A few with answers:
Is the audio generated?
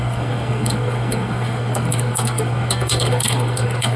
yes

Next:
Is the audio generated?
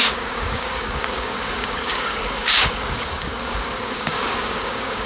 yes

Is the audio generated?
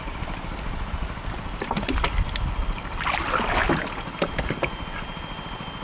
no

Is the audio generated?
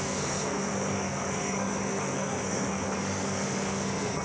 yes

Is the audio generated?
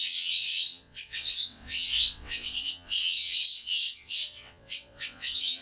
yes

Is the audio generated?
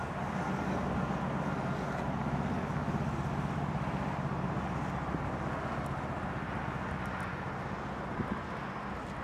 no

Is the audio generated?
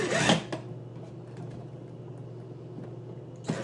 no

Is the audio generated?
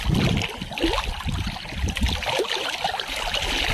no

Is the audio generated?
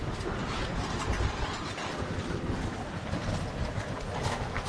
no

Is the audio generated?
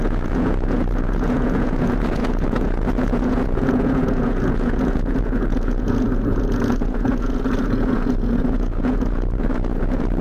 yes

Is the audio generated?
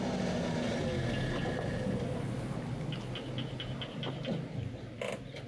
no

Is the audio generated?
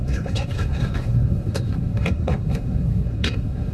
yes